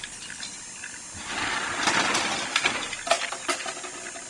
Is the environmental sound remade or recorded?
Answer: recorded